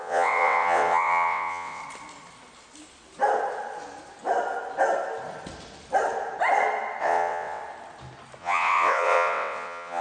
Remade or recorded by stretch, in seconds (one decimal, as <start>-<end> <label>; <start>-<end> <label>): 0.0-1.8 remade; 1.8-7.0 recorded; 7.0-7.6 remade; 7.6-8.4 recorded; 8.4-10.0 remade